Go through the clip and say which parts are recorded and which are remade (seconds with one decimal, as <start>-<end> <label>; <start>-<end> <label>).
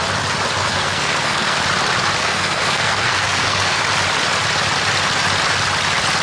0.0-0.6 recorded; 0.6-1.6 remade; 1.6-2.2 recorded; 2.2-3.8 remade; 3.8-6.2 recorded